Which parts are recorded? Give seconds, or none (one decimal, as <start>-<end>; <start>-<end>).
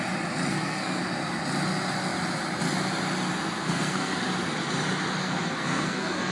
0.0-0.5; 1.0-3.6; 4.2-5.2